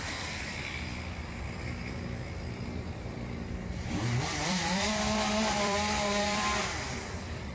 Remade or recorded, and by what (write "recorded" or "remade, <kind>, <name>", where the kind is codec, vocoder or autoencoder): remade, vocoder, BigVGAN v2